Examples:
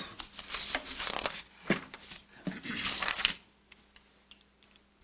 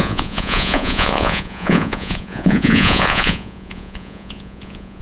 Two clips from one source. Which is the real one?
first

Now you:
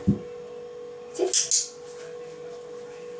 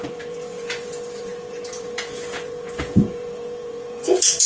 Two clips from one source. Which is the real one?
first